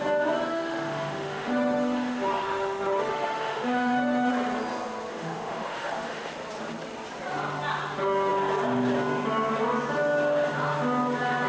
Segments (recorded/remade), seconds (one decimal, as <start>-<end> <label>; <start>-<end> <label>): 0.0-0.5 recorded; 0.5-4.3 remade; 4.3-5.1 recorded; 5.1-6.3 remade; 6.3-11.5 recorded